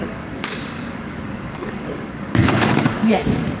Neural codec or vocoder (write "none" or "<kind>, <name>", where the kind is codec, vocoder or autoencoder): codec, DAC